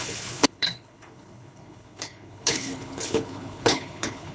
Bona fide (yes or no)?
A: no